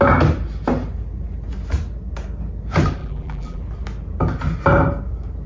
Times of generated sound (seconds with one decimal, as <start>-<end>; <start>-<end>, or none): 3.0-3.6

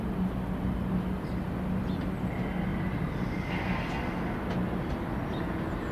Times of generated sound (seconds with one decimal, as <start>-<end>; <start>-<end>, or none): none

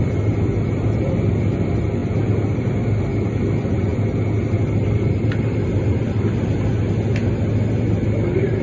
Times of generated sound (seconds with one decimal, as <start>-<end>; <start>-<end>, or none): 0.0-3.9; 4.4-6.7; 7.7-8.6